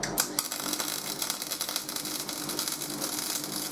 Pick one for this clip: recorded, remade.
recorded